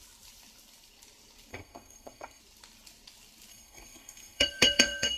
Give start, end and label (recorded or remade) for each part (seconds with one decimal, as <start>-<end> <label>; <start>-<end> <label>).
0.0-1.5 recorded; 1.5-2.4 remade; 2.4-3.5 recorded; 3.5-5.2 remade